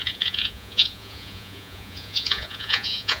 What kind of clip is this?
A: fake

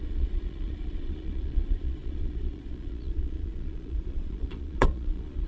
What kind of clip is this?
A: fake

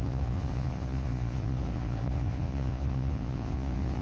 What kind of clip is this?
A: fake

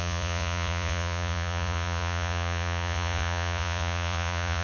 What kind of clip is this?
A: fake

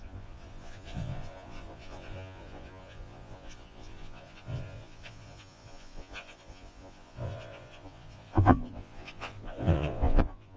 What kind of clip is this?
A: fake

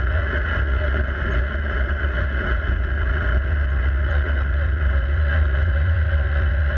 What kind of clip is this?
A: fake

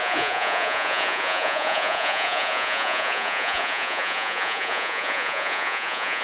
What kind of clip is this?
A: fake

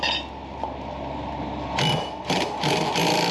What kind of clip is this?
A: real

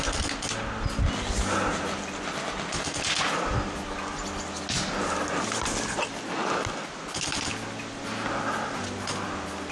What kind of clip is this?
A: real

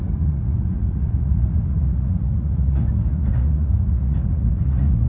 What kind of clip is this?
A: fake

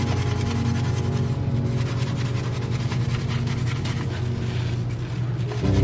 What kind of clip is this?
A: real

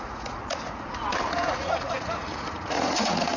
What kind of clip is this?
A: fake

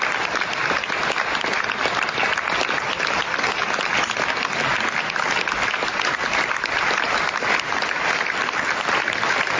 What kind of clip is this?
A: real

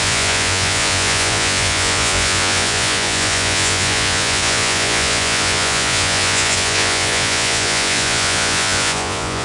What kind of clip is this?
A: fake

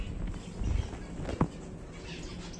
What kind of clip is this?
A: real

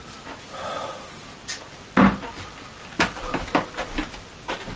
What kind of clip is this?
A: real